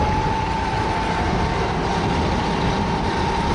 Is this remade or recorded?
recorded